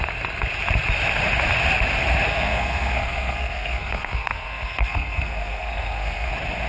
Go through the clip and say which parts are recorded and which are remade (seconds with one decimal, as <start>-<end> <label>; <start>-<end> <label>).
0.0-2.3 recorded; 2.3-6.3 remade; 6.3-6.7 recorded